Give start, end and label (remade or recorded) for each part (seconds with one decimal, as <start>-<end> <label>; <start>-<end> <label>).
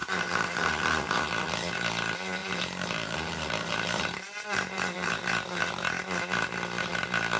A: 0.0-1.1 remade; 1.1-2.4 recorded; 2.4-5.2 remade; 5.2-7.4 recorded